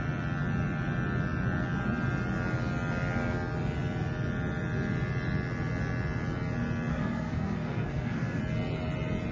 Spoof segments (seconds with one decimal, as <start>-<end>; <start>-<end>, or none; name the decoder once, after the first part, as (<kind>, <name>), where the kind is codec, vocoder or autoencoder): 6.9-8.4 (codec, SNAC)